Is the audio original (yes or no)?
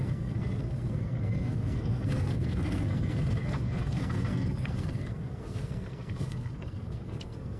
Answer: no